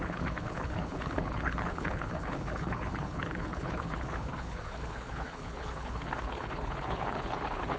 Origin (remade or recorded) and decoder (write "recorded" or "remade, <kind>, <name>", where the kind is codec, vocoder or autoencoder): remade, codec, HILCodec